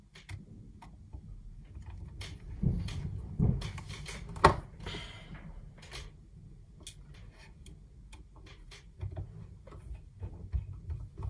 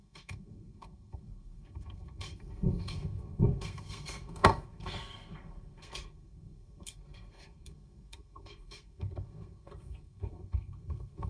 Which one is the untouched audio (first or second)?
first